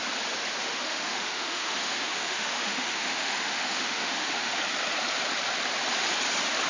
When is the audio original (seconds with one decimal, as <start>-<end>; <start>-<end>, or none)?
0.0-0.6; 4.6-6.7